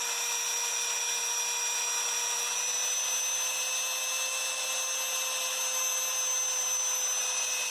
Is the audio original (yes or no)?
yes